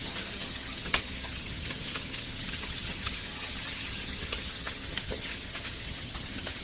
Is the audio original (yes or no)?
no